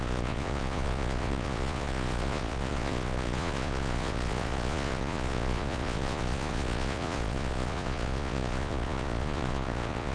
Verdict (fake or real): fake